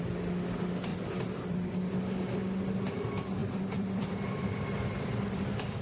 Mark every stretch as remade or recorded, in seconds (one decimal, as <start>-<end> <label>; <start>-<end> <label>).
0.0-0.9 recorded; 0.9-1.7 remade; 1.7-3.4 recorded; 3.4-5.8 remade